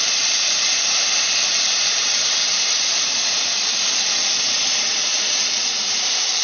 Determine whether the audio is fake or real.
fake